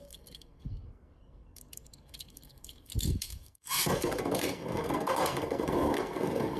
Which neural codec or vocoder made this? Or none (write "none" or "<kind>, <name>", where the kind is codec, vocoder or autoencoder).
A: codec, SNAC